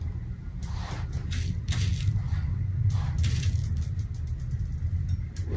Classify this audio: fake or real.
real